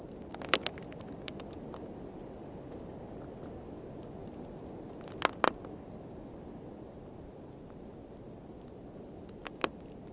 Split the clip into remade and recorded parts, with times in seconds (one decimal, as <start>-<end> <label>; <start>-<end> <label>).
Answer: 0.0-10.1 recorded